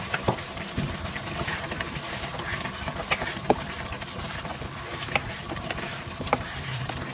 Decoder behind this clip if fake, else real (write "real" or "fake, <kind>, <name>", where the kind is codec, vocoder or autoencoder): fake, vocoder, BigVGAN v2